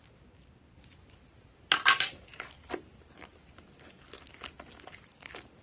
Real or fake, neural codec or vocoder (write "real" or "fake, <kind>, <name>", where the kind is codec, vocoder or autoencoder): real